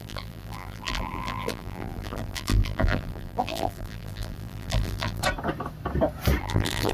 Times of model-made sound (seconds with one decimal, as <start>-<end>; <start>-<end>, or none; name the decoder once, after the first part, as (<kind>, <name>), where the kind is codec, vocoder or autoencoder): 0.0-5.2 (vocoder, BigVGAN v2); 6.4-6.9